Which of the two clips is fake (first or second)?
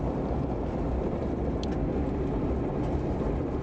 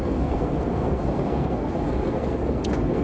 second